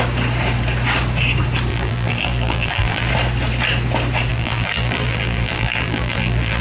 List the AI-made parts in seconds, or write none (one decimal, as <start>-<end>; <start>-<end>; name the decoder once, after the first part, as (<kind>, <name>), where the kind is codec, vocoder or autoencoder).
1.7-3.1 (vocoder, BigVGAN v2); 4.3-6.6